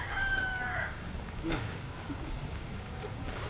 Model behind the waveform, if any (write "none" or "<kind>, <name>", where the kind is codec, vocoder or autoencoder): codec, DAC